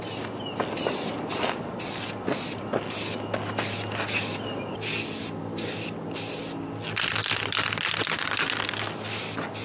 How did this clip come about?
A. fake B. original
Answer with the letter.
B